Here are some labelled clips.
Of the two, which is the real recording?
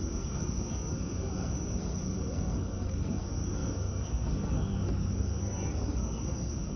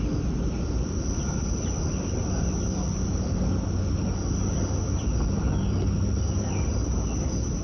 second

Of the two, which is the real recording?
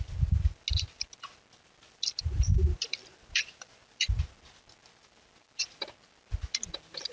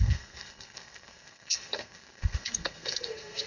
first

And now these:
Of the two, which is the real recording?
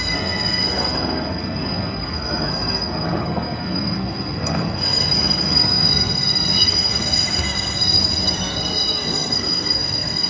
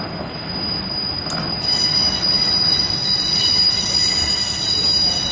second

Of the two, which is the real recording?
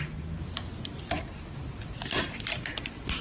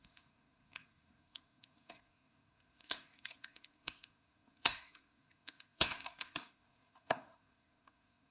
first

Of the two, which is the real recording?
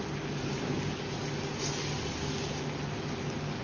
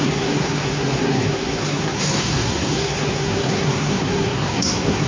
first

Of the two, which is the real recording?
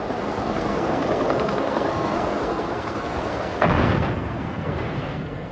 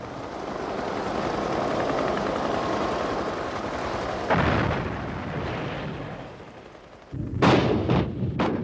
second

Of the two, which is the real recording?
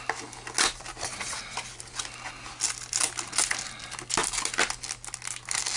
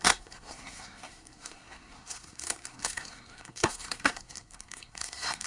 first